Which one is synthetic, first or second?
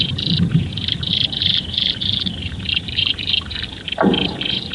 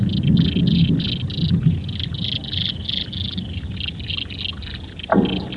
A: first